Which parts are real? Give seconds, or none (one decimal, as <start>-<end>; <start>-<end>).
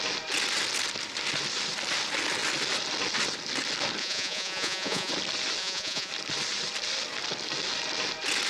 0.0-4.0; 5.1-5.6; 6.1-8.5